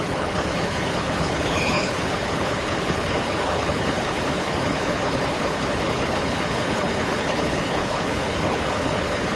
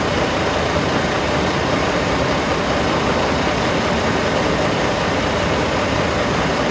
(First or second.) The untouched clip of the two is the second